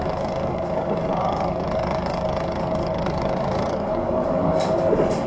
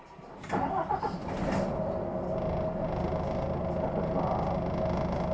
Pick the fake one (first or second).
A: first